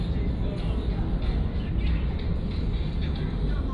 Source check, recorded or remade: recorded